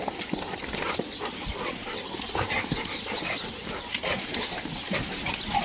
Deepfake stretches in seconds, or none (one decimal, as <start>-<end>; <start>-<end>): none